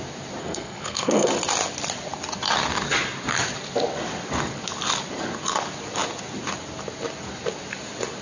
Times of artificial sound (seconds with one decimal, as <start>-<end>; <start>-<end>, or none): 0.4-1.3